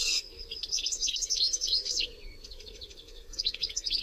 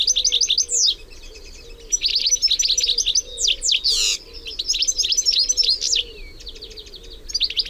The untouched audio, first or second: second